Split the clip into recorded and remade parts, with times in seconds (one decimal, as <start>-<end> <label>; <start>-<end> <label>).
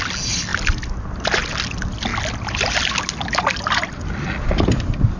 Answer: 0.0-5.2 recorded